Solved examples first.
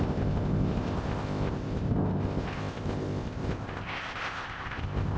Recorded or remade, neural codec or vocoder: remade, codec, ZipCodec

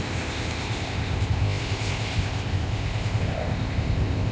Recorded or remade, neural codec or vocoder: remade, codec, ZipCodec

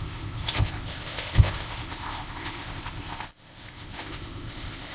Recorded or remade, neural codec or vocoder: remade, codec, ZipCodec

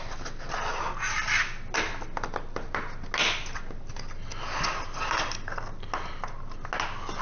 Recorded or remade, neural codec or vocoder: recorded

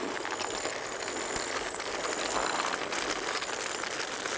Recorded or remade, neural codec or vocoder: recorded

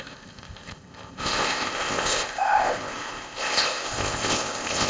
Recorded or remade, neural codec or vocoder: remade, codec, ZipCodec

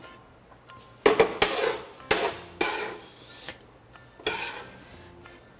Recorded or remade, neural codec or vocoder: recorded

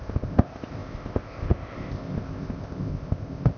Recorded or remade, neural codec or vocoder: remade, codec, ZipCodec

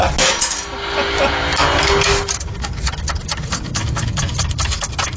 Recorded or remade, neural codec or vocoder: recorded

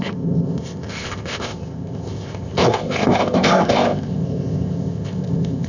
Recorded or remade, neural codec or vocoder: remade, codec, ZipCodec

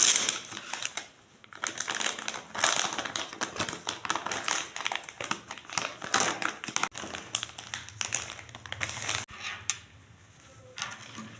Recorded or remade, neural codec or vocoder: recorded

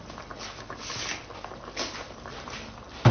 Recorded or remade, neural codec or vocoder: recorded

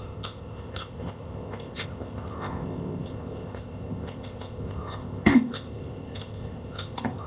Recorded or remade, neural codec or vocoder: remade, codec, ZipCodec